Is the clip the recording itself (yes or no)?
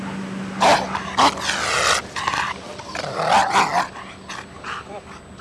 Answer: yes